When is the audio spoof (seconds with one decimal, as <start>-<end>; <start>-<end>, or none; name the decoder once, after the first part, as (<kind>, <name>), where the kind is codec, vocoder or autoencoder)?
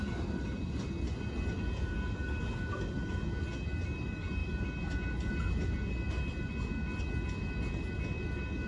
none